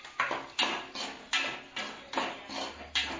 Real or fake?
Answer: real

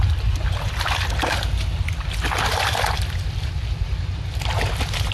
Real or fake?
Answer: real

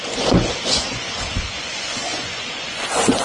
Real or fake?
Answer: fake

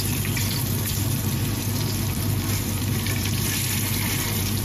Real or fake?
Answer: fake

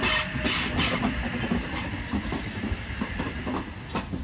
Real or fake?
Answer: real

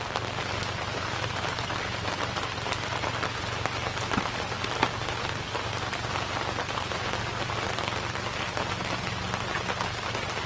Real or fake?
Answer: real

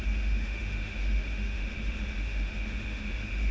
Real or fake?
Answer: fake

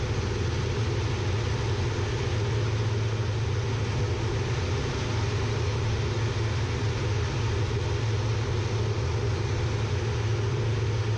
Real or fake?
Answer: real